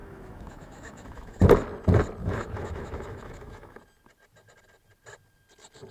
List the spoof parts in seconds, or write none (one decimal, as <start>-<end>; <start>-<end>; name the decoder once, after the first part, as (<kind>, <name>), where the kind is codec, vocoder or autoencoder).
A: 0.0-1.4 (autoencoder, DAC-VAE); 2.2-3.8